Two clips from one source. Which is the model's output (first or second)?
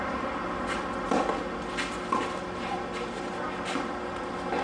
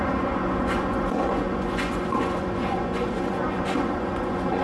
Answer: second